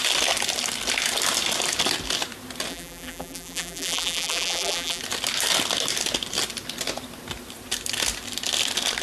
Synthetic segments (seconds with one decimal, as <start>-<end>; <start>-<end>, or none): 2.7-5.0